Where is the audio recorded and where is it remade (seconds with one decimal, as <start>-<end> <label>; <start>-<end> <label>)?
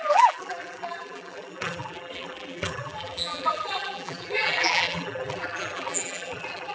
0.0-6.7 remade